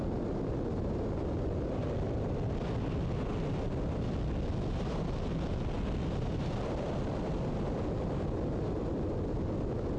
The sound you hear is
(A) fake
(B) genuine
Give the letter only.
B